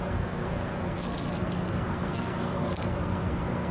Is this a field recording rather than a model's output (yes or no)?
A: no